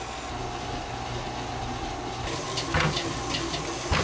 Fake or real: real